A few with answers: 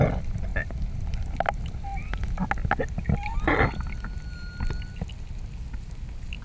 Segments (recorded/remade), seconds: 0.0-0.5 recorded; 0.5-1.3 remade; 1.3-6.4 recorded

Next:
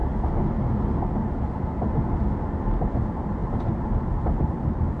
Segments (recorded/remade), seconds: 0.0-3.0 recorded; 3.0-5.0 remade

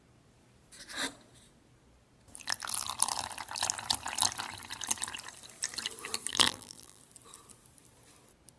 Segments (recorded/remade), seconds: 0.0-6.3 recorded; 6.3-7.0 remade; 7.0-8.6 recorded

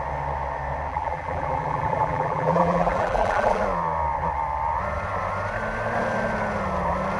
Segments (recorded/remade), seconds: 0.0-0.9 recorded; 0.9-3.6 remade; 3.6-7.2 recorded

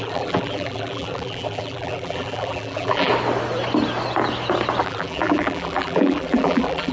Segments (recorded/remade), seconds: 0.0-3.1 remade; 3.1-4.8 recorded; 4.8-6.9 remade

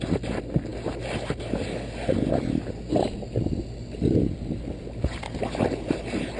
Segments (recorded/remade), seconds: 0.0-6.4 recorded

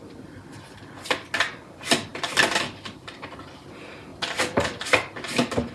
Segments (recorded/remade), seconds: 0.0-2.1 recorded; 2.1-3.0 remade; 3.0-4.1 recorded; 4.1-4.8 remade; 4.8-5.7 recorded